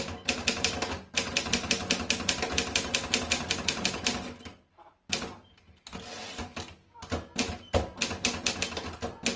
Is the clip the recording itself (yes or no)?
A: yes